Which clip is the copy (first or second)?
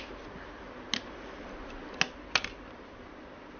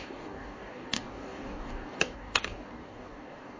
second